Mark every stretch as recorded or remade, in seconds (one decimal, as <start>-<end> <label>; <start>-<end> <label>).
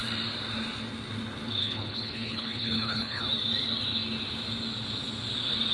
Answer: 0.0-1.6 recorded; 1.6-3.2 remade; 3.2-5.7 recorded